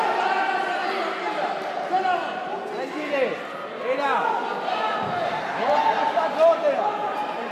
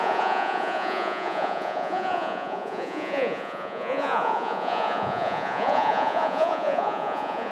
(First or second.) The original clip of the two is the first